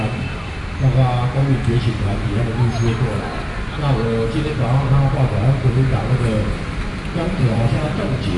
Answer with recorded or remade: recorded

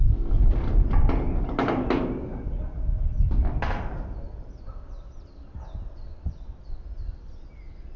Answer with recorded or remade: recorded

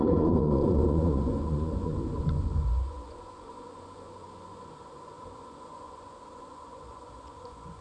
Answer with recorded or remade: remade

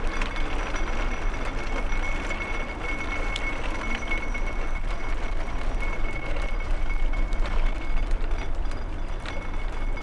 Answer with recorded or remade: recorded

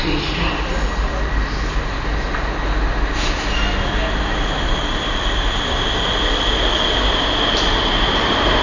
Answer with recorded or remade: recorded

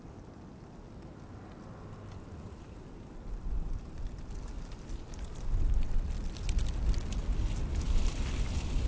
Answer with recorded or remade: recorded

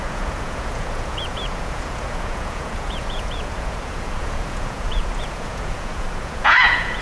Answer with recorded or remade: remade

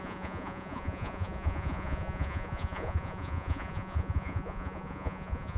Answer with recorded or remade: remade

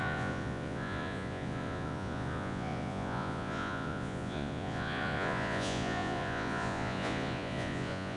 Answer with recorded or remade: remade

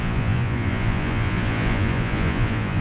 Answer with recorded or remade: remade